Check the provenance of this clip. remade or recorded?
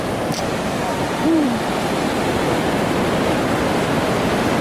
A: remade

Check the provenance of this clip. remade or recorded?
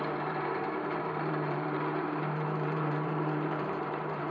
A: remade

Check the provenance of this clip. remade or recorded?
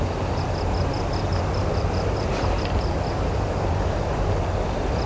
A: recorded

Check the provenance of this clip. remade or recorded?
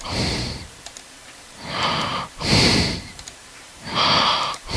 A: remade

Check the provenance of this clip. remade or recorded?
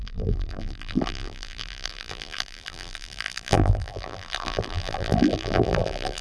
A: remade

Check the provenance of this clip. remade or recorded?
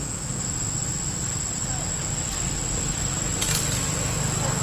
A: recorded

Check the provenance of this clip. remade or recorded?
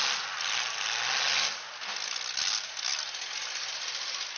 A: recorded